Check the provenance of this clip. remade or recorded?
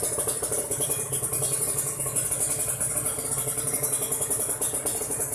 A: recorded